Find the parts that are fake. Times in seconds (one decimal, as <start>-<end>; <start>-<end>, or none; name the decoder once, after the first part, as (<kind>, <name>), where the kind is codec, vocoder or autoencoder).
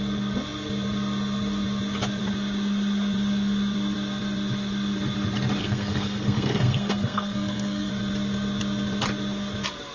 5.6-7.9 (codec, SNAC)